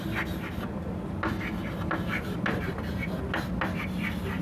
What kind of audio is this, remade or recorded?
recorded